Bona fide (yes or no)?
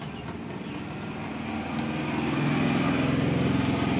yes